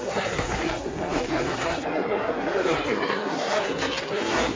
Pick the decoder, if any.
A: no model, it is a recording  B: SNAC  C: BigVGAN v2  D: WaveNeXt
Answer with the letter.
B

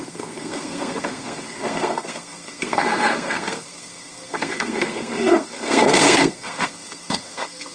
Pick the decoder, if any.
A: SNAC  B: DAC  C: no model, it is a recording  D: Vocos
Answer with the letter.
A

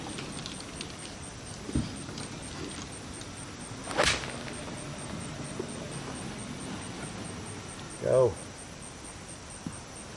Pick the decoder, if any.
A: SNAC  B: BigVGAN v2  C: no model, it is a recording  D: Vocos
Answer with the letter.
C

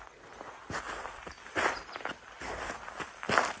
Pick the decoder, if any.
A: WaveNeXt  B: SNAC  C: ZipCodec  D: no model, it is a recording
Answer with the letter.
D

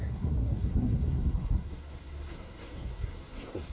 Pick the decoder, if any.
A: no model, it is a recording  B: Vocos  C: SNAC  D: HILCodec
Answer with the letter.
C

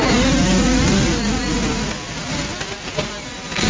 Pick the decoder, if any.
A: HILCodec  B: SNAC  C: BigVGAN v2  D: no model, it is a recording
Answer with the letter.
D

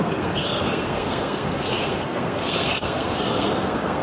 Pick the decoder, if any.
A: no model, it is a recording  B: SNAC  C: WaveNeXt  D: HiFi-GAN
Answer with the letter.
B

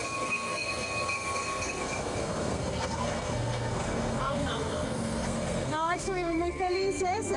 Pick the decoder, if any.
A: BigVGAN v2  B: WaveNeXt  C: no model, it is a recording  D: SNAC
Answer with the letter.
D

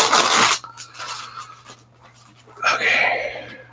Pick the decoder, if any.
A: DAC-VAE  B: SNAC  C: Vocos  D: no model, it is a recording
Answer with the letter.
D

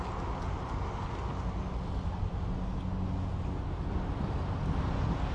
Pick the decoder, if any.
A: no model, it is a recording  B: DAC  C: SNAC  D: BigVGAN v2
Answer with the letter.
A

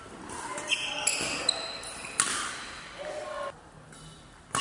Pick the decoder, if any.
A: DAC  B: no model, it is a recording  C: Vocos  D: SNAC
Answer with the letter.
B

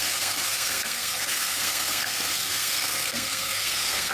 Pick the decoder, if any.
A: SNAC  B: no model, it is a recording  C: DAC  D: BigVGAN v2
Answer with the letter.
A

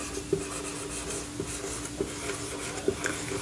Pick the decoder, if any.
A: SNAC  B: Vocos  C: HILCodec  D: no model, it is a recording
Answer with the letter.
D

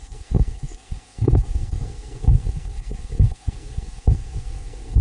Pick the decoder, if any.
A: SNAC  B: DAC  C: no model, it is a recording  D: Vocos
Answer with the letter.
A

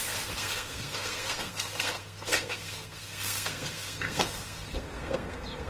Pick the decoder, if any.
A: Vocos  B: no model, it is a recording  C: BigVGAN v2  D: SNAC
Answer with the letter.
D